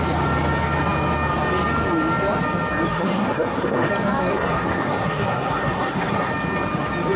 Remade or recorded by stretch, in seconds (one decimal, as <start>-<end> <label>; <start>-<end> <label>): 0.0-2.9 recorded; 2.9-3.9 remade; 3.9-4.3 recorded; 4.3-6.3 remade; 6.3-7.2 recorded

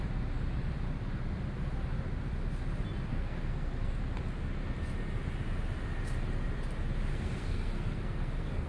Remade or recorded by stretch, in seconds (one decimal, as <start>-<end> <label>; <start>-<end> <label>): 0.0-3.1 recorded; 3.1-4.0 remade; 4.0-7.1 recorded; 7.1-8.7 remade